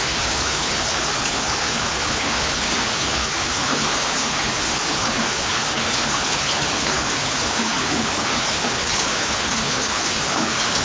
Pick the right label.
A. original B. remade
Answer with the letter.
B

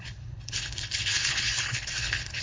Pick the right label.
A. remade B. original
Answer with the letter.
A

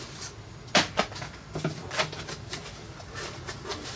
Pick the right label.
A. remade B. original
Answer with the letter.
B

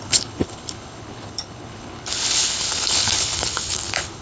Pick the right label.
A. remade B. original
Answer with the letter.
A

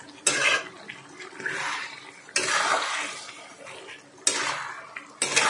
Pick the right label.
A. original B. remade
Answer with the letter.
A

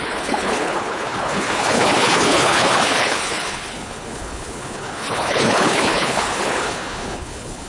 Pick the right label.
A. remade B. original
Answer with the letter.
A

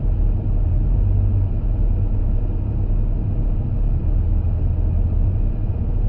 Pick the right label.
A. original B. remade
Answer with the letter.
A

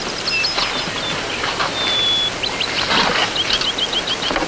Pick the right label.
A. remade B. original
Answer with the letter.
B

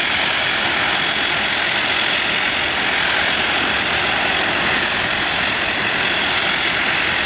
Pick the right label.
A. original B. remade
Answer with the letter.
A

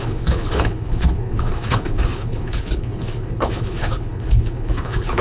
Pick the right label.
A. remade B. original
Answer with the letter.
A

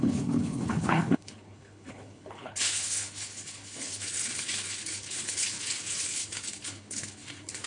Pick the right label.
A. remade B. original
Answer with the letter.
A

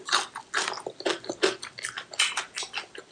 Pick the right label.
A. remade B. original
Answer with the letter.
B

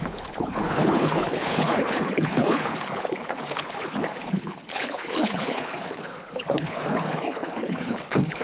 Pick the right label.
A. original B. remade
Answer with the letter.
B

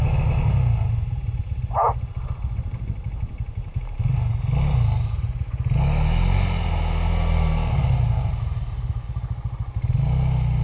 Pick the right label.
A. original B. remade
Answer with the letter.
A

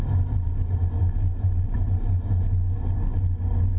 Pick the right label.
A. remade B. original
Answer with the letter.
B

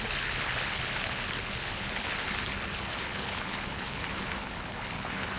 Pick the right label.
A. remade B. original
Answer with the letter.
A